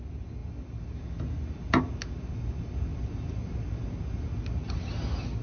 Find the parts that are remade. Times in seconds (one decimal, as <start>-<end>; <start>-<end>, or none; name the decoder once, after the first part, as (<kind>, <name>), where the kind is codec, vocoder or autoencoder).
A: none